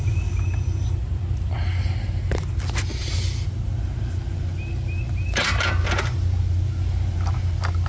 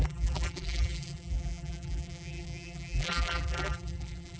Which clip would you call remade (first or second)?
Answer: second